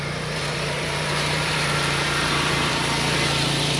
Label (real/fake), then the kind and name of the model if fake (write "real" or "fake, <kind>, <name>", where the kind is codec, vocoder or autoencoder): fake, vocoder, BigVGAN v2